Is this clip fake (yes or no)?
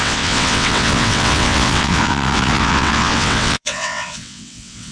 yes